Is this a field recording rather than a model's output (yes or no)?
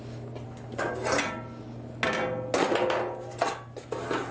yes